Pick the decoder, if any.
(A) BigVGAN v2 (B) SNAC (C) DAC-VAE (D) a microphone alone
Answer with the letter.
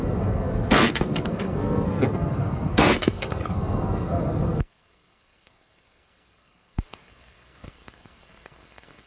B